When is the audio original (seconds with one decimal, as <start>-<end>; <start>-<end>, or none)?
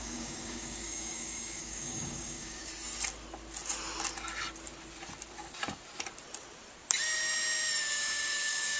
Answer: 2.7-7.9